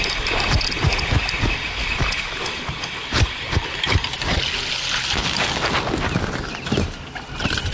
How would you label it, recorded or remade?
recorded